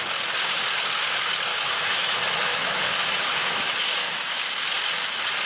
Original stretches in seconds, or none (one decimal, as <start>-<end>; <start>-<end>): 0.0-1.5; 4.4-5.5